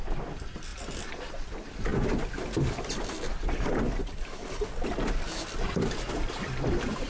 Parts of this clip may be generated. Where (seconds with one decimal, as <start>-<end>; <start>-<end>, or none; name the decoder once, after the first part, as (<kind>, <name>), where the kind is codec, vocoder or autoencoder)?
none